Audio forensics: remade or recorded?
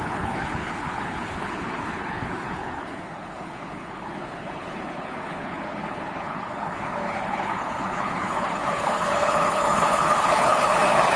remade